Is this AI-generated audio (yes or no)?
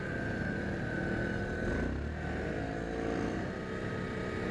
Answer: no